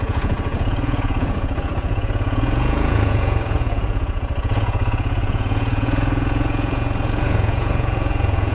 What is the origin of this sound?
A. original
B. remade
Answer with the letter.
B